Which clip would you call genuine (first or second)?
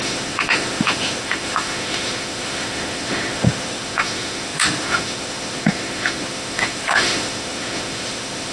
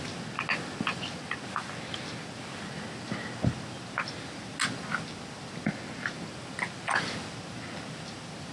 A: second